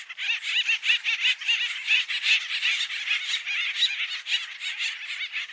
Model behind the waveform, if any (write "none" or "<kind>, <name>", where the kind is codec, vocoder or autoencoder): none